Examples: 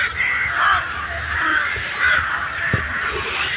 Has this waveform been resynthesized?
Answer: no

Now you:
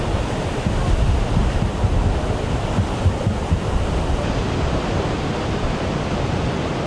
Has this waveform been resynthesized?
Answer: no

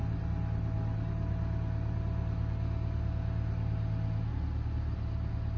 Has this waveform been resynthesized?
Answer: no